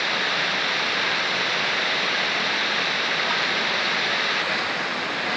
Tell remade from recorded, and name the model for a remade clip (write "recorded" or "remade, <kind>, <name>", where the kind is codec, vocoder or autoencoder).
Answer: recorded